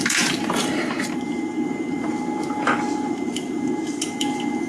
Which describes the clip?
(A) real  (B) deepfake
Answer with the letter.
B